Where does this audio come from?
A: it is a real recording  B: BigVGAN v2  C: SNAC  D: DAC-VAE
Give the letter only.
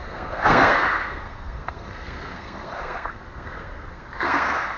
C